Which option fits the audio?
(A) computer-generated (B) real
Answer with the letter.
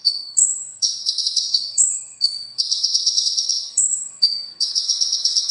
A